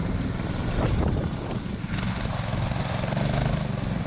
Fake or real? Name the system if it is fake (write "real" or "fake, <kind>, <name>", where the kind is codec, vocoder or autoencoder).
real